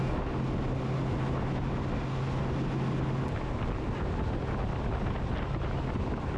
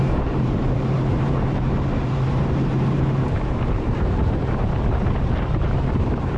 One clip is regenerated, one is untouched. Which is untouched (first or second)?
first